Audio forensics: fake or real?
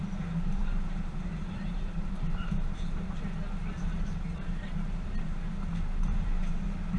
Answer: fake